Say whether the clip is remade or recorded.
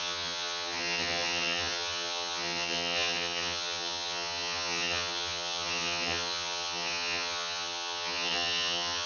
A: remade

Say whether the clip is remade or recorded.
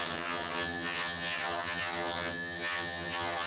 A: remade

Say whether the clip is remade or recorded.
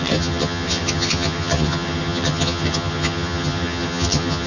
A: remade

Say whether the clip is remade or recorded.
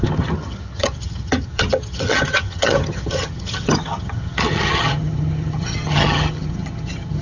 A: remade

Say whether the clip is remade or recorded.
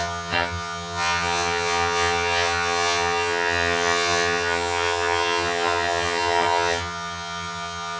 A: remade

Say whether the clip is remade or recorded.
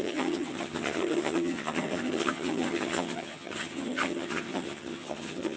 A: remade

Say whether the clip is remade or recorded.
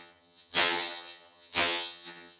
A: remade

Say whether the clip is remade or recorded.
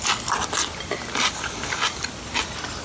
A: recorded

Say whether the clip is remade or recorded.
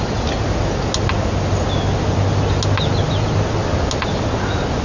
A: recorded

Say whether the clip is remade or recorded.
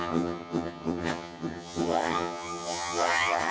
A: remade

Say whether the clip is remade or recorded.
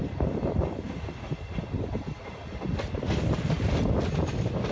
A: recorded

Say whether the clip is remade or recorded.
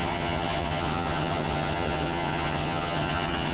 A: remade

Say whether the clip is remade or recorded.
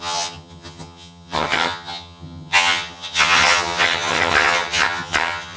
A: remade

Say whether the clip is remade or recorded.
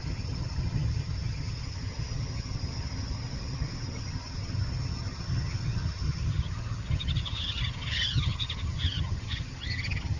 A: remade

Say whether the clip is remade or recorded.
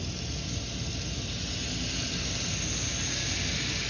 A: recorded